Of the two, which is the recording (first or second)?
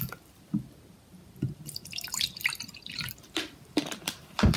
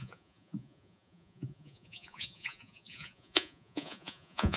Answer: first